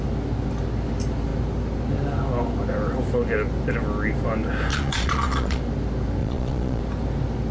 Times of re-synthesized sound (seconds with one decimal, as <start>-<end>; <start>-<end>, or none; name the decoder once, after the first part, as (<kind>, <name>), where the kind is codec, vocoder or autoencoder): 4.7-5.6 (vocoder, Vocos); 6.2-6.8